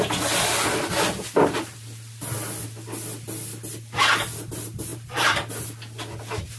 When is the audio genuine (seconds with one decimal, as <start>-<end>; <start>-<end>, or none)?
0.0-4.9; 5.5-6.6